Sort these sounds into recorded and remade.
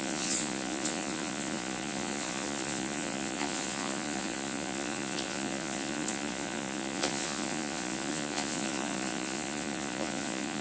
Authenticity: remade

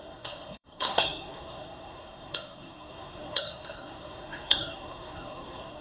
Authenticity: remade